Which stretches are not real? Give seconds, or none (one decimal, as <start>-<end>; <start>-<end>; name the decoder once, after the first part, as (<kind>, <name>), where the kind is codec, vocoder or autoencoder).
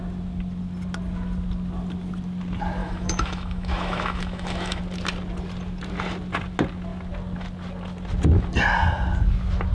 2.8-4.8 (autoencoder, DAC-VAE)